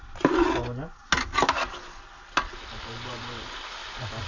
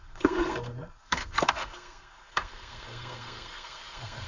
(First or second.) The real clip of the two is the first